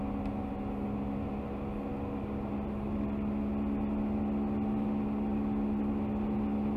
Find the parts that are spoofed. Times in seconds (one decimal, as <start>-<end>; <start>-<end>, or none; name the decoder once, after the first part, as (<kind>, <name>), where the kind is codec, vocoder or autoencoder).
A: none